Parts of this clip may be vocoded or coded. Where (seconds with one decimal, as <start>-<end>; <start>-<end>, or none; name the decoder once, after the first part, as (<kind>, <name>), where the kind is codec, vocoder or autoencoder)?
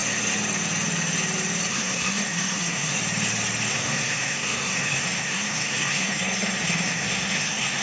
1.7-3.0 (codec, SNAC); 3.7-7.8